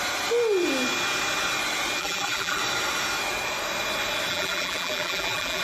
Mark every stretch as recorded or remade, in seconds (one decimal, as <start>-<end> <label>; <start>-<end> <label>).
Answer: 0.0-2.0 recorded; 2.0-2.6 remade; 2.6-4.3 recorded; 4.3-5.6 remade